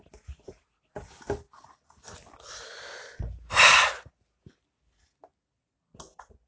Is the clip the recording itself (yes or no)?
yes